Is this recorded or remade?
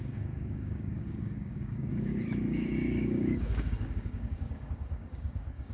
remade